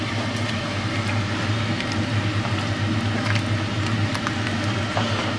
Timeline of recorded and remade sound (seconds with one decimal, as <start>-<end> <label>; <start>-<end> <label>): 0.0-5.4 recorded

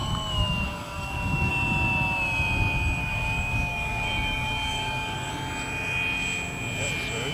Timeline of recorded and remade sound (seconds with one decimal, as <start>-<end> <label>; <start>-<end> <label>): 0.0-1.5 remade; 1.5-3.0 recorded; 3.0-5.3 remade; 5.3-7.3 recorded

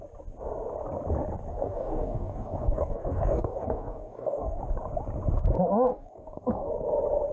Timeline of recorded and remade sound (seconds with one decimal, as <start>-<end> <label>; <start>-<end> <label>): 0.0-1.5 recorded; 1.5-4.6 remade; 4.6-5.9 recorded; 5.9-6.7 remade; 6.7-7.3 recorded

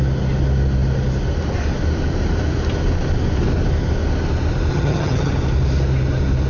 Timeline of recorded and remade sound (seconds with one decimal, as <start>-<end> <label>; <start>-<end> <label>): 0.0-4.7 recorded; 4.7-5.3 remade; 5.3-6.5 recorded

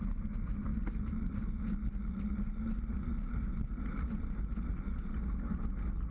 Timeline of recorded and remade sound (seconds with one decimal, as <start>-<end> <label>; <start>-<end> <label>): 0.0-6.1 recorded

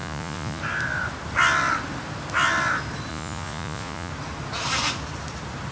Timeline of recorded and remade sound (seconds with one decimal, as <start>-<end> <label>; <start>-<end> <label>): 0.0-0.6 remade; 0.6-3.1 recorded; 3.1-4.1 remade; 4.1-5.7 recorded